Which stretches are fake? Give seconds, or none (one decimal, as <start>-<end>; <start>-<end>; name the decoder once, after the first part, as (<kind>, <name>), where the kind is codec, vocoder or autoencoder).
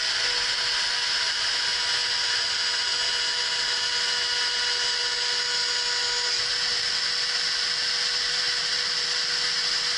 none